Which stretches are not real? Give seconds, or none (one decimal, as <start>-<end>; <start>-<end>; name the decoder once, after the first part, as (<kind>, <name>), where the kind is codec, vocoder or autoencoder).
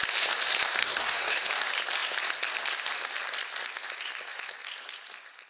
0.8-1.5 (codec, DAC)